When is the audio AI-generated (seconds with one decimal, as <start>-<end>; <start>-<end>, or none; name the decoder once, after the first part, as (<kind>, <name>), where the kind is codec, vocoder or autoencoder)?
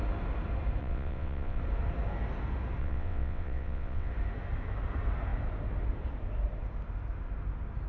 0.8-1.6 (vocoder, WaveNeXt); 2.8-4.1